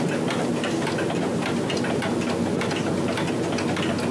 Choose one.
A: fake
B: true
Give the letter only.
B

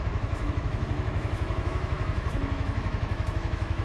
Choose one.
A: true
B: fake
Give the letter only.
B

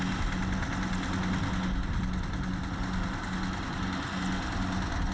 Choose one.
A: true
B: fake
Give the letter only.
A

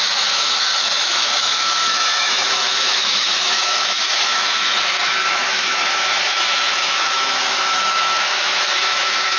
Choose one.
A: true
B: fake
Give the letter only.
B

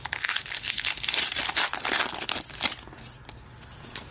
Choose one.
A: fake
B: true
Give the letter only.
B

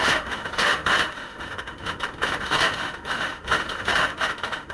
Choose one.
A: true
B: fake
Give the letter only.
B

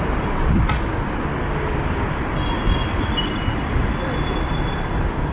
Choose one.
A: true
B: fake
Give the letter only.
A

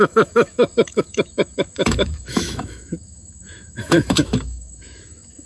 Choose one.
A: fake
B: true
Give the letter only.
A